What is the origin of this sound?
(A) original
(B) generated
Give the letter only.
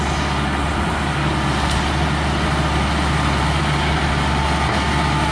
A